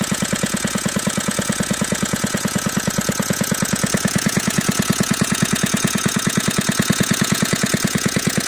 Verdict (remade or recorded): remade